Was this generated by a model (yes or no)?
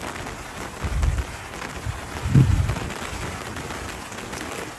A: no